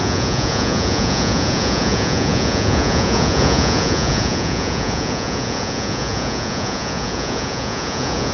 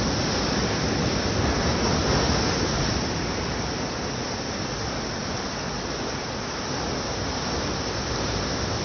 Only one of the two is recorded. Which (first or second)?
second